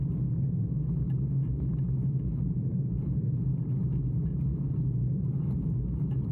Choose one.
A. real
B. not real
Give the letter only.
B